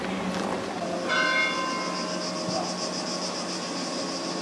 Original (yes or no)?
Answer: yes